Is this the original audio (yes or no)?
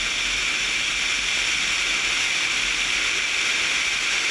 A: yes